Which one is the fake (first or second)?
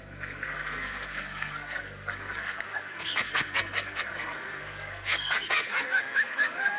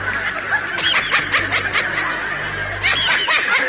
first